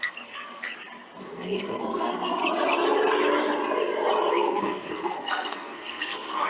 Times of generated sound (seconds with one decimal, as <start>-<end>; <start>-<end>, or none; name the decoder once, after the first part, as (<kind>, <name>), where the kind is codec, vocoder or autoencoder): 0.0-0.7 (codec, SNAC); 1.2-2.4; 4.3-6.5